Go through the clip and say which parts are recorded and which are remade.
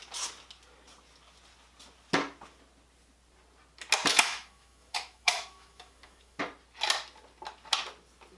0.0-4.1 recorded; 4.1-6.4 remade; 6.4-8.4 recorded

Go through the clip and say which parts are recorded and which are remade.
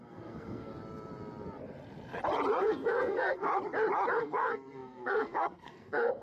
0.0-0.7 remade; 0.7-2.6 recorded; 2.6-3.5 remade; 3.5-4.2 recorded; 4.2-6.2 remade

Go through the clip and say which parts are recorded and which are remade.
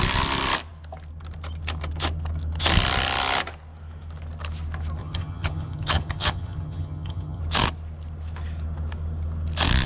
0.0-5.0 recorded; 5.0-7.4 remade; 7.4-9.9 recorded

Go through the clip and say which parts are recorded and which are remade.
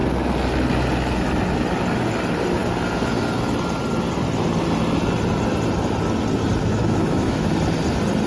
0.0-6.6 recorded; 6.6-7.5 remade; 7.5-8.3 recorded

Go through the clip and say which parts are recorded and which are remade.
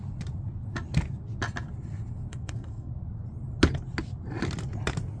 0.0-2.3 recorded; 2.3-2.9 remade; 2.9-5.2 recorded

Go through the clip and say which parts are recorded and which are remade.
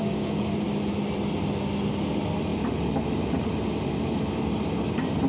0.0-0.5 remade; 0.5-5.3 recorded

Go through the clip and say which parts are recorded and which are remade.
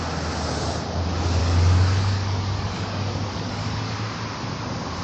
0.0-1.4 recorded; 1.4-3.9 remade; 3.9-5.0 recorded